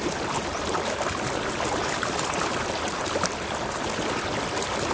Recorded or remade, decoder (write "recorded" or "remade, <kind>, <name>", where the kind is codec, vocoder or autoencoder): recorded